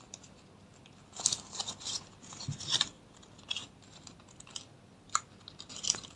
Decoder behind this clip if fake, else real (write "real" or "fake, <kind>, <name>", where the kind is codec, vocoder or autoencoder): real